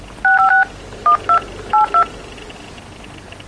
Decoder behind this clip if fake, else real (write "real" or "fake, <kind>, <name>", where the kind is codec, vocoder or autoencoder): real